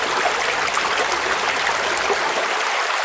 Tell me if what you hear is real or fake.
real